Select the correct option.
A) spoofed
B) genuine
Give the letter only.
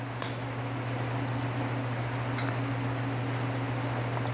B